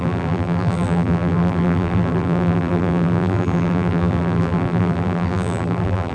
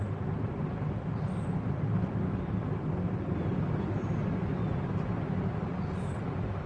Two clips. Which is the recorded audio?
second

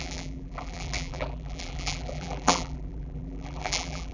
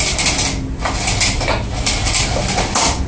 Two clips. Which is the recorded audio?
second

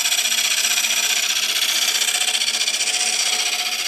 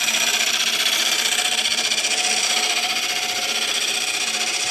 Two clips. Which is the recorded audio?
first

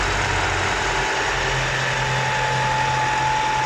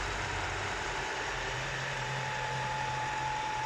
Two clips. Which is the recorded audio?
first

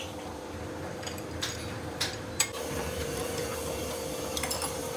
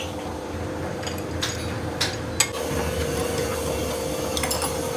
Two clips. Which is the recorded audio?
second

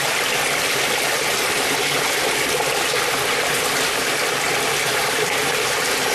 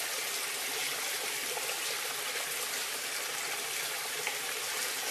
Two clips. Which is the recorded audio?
first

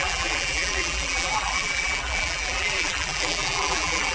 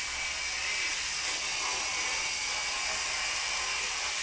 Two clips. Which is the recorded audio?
second